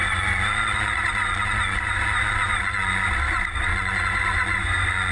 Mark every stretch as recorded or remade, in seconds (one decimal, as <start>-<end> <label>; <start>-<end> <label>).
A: 0.0-3.1 remade; 3.1-3.7 recorded; 3.7-5.1 remade